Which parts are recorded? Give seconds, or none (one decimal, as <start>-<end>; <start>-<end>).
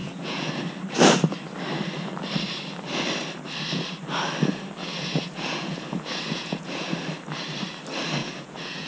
0.5-4.8; 6.9-8.2